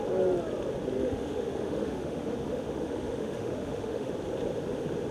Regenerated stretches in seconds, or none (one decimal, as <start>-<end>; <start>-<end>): 1.0-4.1